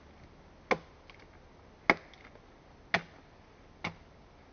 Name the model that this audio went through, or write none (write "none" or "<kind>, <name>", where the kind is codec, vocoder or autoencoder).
none